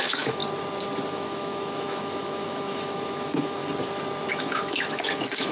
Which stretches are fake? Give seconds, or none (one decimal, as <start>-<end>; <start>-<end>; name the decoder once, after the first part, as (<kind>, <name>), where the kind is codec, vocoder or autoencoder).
0.0-0.4 (autoencoder, DAC-VAE); 1.1-3.6; 4.3-5.5